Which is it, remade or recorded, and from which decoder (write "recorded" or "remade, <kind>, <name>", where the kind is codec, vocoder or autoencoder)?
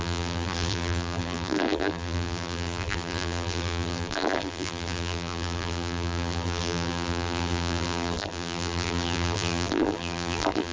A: remade, vocoder, BigVGAN v2